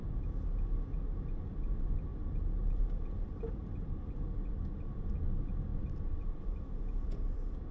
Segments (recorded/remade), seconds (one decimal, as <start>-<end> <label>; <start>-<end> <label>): 0.0-2.1 recorded; 2.1-5.2 remade; 5.2-7.7 recorded

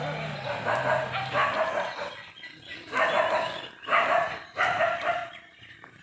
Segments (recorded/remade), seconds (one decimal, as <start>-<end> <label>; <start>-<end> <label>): 0.0-2.7 recorded; 2.7-3.2 remade; 3.2-3.9 recorded; 3.9-4.8 remade; 4.8-5.2 recorded; 5.2-6.0 remade